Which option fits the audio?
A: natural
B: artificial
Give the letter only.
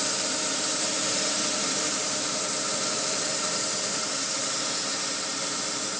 B